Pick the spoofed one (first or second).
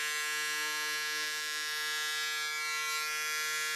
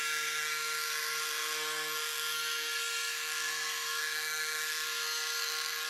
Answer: second